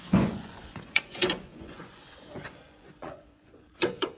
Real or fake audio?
fake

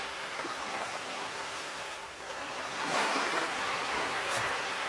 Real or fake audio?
fake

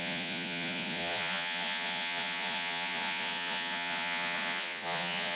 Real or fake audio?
fake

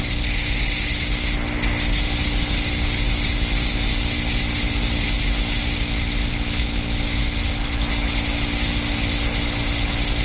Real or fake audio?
real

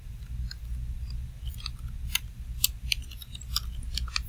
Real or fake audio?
real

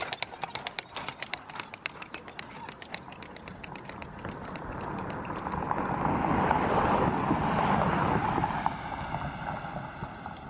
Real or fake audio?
real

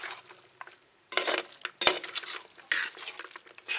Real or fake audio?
real